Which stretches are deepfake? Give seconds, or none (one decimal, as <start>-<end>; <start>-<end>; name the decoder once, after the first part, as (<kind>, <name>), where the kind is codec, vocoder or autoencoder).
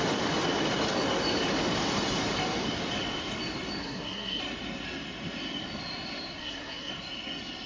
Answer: 3.8-4.4 (codec, SNAC); 6.4-6.9